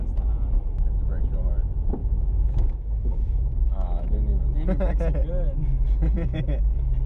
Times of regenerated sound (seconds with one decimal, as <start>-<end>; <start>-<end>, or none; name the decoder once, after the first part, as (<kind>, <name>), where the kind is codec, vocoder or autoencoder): 2.0-4.4 (autoencoder, DAC-VAE)